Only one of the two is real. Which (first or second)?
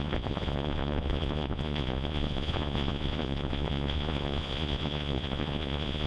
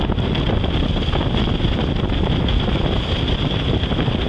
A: second